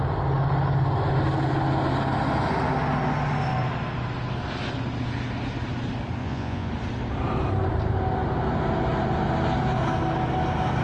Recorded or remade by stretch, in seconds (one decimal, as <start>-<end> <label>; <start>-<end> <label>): 0.0-6.2 recorded; 6.2-6.7 remade; 6.7-10.8 recorded